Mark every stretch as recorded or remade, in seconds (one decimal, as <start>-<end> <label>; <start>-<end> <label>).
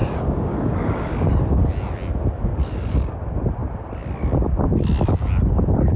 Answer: 0.0-1.3 remade; 1.3-2.5 recorded; 2.5-3.2 remade; 3.2-6.0 recorded